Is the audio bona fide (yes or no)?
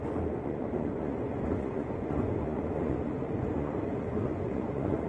no